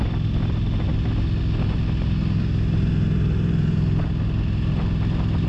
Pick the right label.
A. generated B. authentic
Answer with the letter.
B